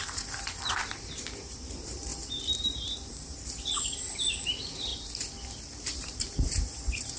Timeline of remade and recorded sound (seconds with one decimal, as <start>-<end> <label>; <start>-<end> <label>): 0.0-4.9 remade; 4.9-5.8 recorded; 5.8-7.2 remade